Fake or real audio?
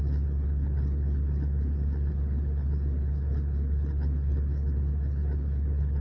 fake